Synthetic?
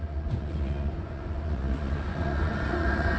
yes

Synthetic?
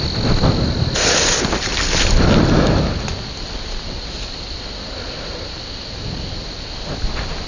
no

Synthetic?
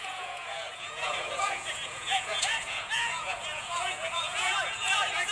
yes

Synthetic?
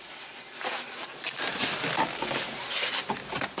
no